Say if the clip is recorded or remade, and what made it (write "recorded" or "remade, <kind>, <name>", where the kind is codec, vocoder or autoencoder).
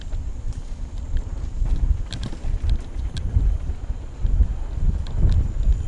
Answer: recorded